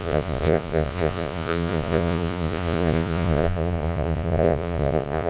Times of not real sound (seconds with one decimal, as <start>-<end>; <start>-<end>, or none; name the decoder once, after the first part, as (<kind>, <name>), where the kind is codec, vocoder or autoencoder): 0.0-5.3 (vocoder, Vocos)